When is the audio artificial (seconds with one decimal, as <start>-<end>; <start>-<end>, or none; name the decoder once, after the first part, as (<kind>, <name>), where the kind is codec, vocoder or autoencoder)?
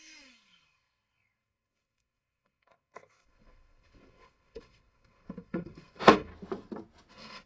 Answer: 0.0-6.3 (codec, SNAC); 7.1-7.5